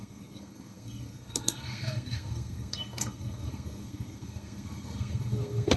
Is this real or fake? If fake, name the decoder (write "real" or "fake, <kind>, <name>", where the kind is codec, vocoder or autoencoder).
fake, codec, SNAC